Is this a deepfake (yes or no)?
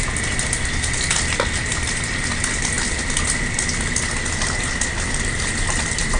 no